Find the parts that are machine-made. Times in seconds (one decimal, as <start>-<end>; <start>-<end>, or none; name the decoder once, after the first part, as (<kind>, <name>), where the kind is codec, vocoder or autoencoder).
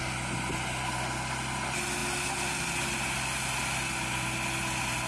none